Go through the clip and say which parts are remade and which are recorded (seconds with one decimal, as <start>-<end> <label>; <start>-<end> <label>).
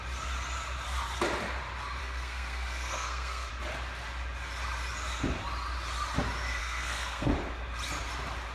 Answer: 0.0-2.0 recorded; 2.0-3.5 remade; 3.5-6.6 recorded; 6.6-7.3 remade; 7.3-8.5 recorded